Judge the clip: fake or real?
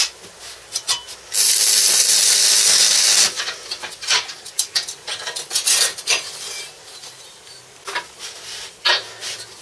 real